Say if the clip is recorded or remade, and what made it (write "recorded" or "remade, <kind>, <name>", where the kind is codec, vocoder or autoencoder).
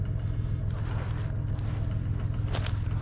recorded